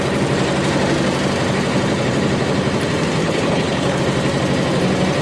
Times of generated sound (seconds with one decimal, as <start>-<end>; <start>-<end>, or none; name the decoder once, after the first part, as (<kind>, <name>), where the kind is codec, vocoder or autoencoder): 3.2-4.0 (codec, HILCodec)